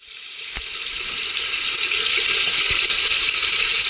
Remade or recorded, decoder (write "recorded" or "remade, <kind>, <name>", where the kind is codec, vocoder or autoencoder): remade, vocoder, BigVGAN v2